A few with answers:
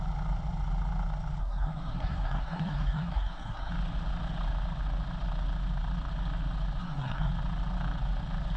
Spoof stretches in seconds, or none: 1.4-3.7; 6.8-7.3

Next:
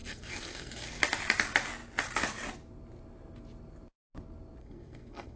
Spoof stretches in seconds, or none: 0.0-1.0; 4.6-5.4

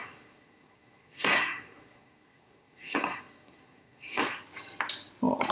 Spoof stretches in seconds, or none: 0.0-4.2

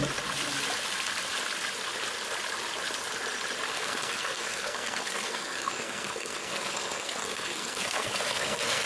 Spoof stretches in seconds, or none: 3.7-8.9

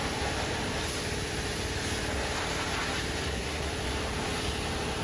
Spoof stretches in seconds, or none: 3.2-3.7

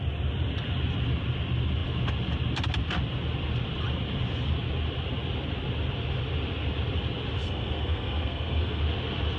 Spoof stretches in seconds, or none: 7.4-8.8

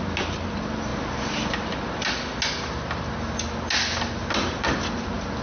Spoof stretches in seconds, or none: none

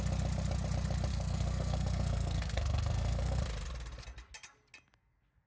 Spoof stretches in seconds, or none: 1.1-3.4